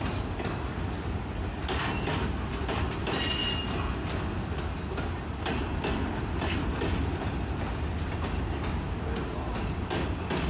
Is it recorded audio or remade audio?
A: recorded